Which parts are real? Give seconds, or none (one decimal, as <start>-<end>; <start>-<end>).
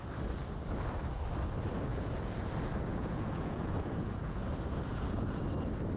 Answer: 0.0-1.9; 2.5-2.9; 4.4-4.9; 5.5-6.0